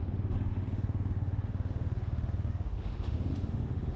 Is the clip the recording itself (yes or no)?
no